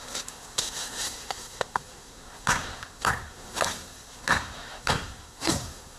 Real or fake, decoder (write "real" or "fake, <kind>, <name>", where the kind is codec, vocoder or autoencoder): fake, codec, SNAC